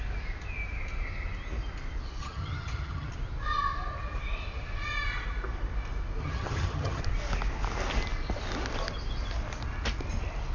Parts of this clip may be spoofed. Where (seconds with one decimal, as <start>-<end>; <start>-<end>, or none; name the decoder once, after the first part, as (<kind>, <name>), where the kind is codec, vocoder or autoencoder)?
2.2-3.1 (vocoder, HiFi-GAN); 6.2-7.0